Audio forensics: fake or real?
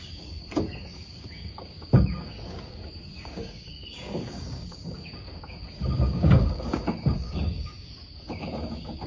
fake